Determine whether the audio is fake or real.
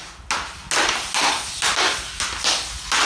real